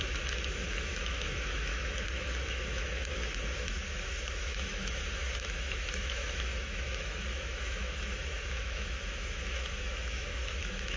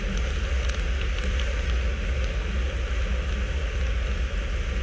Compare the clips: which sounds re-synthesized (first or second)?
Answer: first